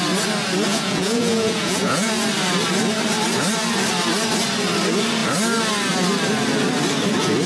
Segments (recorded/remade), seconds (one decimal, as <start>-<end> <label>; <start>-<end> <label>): 0.0-0.7 recorded; 0.7-2.1 remade; 2.1-7.5 recorded